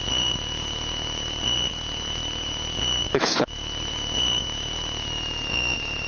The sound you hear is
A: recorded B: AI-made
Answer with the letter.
B